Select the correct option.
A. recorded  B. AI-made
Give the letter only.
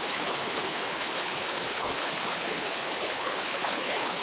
B